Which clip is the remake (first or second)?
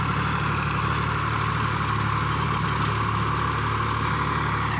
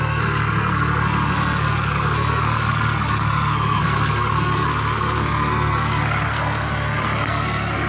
second